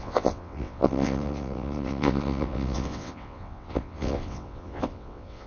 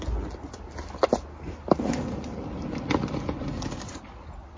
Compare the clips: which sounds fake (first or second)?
first